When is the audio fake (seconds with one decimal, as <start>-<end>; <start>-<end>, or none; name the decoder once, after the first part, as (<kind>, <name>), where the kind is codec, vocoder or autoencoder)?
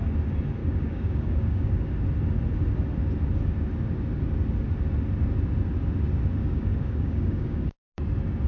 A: 0.6-1.8 (codec, DAC); 6.4-7.8